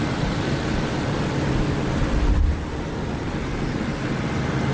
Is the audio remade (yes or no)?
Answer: no